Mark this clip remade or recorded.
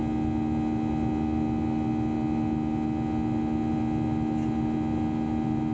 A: recorded